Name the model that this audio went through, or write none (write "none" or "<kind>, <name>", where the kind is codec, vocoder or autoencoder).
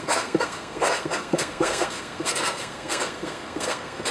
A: codec, SNAC